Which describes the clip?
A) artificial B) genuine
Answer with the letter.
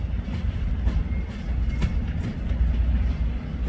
B